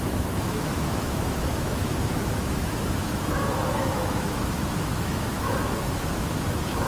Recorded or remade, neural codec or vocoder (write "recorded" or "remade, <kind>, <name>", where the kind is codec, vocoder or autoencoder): remade, autoencoder, DAC-VAE